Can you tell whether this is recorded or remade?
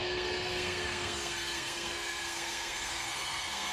remade